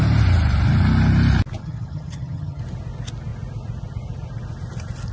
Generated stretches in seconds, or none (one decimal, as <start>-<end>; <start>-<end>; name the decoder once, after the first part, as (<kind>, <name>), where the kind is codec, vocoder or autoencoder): 1.6-2.6 (vocoder, HiFi-GAN)